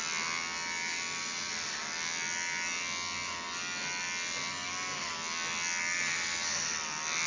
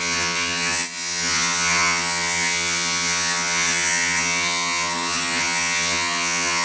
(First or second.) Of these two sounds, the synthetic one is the second